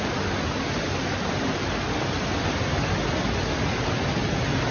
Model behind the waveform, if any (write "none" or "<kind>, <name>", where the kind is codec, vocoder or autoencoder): none